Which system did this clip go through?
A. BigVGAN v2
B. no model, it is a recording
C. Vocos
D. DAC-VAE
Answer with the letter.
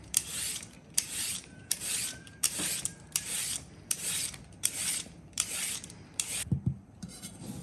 A